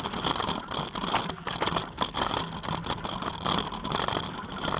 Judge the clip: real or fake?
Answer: real